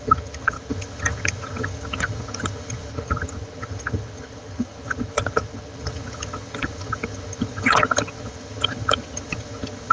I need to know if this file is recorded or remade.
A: remade